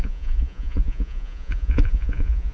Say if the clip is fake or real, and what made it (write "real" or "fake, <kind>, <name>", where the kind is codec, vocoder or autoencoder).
fake, vocoder, Vocos